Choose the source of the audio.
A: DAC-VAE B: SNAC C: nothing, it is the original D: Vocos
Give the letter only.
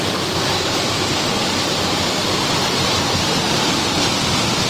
C